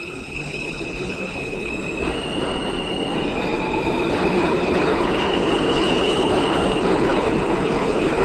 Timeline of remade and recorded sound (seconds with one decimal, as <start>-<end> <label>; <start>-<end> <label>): 0.0-1.7 remade; 1.7-4.1 recorded; 4.1-8.2 remade